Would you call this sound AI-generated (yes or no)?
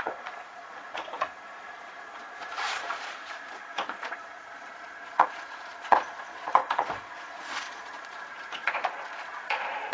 yes